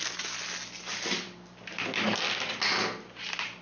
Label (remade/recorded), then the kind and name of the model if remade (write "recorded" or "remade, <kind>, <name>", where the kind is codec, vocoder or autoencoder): recorded